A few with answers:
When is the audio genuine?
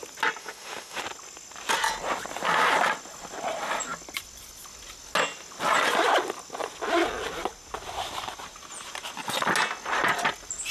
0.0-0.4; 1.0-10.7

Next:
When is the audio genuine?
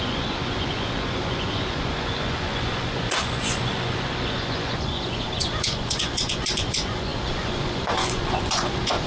none